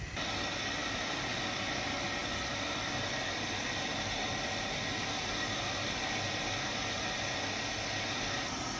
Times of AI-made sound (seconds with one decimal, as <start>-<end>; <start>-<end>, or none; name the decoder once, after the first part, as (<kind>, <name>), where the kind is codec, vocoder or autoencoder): none